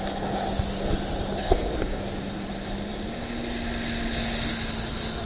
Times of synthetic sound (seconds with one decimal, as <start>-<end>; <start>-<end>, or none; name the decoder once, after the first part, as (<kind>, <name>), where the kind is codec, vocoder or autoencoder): 1.4-2.0 (codec, SNAC)